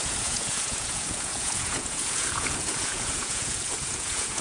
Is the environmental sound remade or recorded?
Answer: remade